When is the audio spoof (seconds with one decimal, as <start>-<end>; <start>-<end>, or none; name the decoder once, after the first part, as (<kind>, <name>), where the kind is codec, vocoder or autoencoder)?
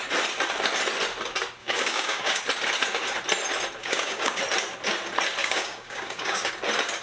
1.6-2.4 (codec, DAC); 3.8-4.4; 5.4-6.5